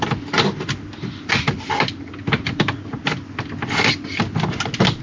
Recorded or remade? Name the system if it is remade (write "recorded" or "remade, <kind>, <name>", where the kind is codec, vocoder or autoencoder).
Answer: recorded